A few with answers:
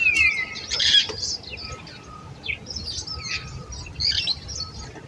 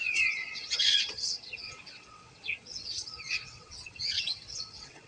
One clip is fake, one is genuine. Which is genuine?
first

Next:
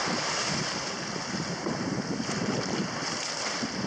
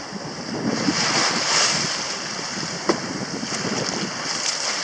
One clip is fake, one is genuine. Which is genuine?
second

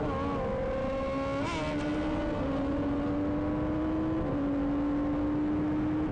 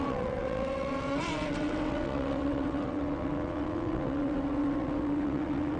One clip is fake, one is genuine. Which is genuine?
first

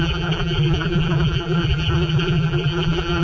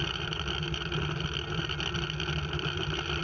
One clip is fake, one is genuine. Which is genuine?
second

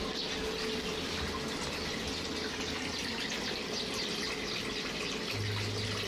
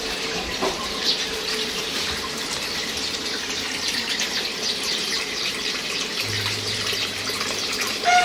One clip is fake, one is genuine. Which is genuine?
first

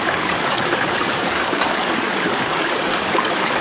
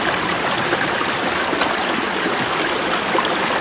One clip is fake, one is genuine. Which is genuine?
second